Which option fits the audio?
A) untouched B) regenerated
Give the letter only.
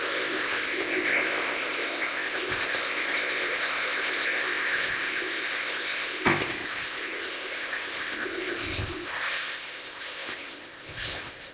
B